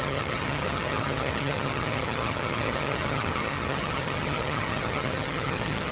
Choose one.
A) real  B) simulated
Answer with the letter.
B